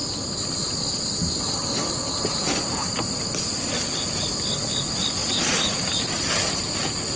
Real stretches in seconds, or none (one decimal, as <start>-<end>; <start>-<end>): 0.0-5.2; 6.2-7.2